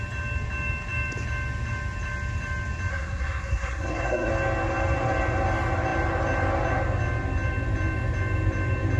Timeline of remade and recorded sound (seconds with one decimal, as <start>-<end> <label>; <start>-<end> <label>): 0.0-2.9 recorded; 2.9-4.3 remade; 4.3-9.0 recorded